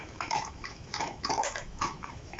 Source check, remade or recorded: remade